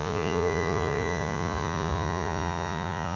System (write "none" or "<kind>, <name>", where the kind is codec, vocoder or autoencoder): vocoder, Vocos